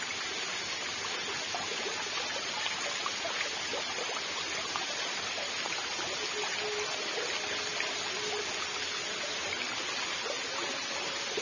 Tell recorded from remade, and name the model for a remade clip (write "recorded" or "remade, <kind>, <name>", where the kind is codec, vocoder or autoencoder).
recorded